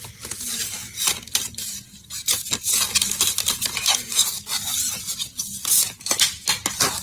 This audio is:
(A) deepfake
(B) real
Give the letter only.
B